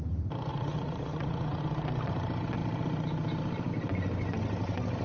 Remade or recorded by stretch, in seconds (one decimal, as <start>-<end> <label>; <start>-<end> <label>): 0.0-0.5 recorded; 0.5-1.6 remade; 1.6-5.0 recorded

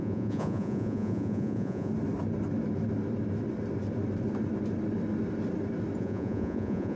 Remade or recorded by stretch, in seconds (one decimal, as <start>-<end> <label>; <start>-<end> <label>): 0.0-1.9 remade; 1.9-6.0 recorded; 6.0-7.0 remade